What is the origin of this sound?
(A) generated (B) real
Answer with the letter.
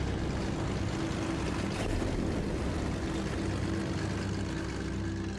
B